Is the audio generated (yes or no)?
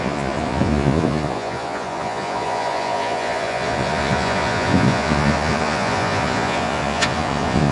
yes